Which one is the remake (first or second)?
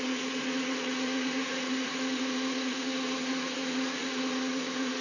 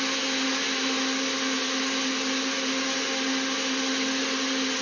first